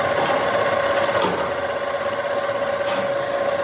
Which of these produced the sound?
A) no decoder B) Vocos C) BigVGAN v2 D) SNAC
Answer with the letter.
A